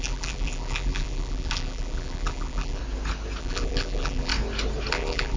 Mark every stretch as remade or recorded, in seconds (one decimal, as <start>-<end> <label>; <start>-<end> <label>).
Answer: 0.0-2.8 remade; 2.8-3.4 recorded; 3.4-4.3 remade; 4.3-4.9 recorded; 4.9-5.4 remade

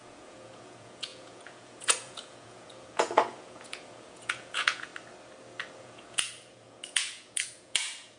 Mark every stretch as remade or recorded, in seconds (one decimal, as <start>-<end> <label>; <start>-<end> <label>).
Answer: 0.0-4.9 remade; 4.9-5.8 recorded; 5.8-8.2 remade